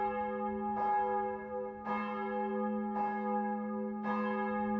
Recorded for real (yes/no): yes